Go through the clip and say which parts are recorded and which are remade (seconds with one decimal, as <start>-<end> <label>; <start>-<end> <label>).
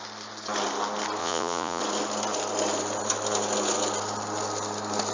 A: 0.0-1.2 recorded; 1.2-1.8 remade; 1.8-5.1 recorded